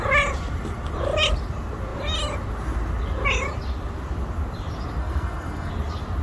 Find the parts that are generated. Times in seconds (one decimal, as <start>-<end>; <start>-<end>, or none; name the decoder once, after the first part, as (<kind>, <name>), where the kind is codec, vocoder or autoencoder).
5.0-5.7 (codec, SNAC)